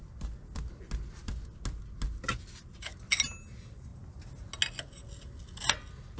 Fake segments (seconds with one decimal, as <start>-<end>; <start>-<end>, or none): none

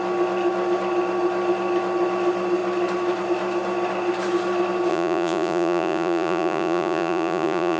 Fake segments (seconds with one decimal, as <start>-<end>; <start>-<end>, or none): 4.9-7.8

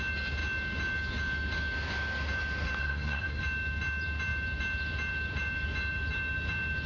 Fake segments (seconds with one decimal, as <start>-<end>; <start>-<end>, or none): 2.8-3.4

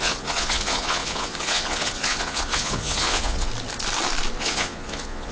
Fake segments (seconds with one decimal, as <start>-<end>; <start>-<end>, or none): 0.0-3.5; 4.4-5.3

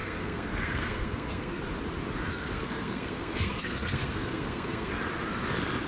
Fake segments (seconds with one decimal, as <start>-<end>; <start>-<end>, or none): 0.0-1.6; 2.3-4.9

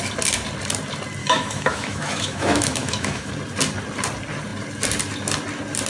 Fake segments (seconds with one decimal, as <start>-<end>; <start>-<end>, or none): 1.2-3.3

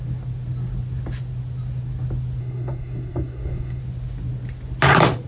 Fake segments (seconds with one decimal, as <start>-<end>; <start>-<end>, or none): 2.4-3.8